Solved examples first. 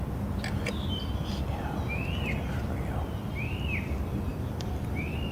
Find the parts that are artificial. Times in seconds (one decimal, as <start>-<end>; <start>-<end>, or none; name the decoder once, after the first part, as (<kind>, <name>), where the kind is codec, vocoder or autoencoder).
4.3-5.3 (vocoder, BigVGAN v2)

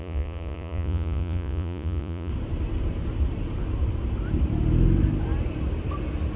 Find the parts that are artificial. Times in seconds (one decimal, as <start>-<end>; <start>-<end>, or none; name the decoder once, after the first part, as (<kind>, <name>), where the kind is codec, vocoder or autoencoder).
0.0-2.3 (vocoder, Vocos)

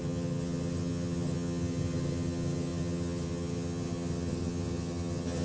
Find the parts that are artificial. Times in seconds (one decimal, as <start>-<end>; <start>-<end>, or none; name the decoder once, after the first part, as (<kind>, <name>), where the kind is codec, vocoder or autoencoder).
0.0-5.4 (vocoder, HiFi-GAN)